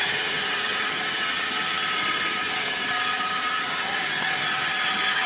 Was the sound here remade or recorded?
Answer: remade